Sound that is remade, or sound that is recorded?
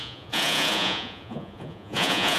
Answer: remade